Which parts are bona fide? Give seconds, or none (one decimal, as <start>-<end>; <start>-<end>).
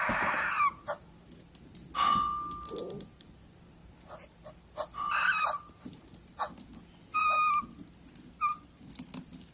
0.0-9.5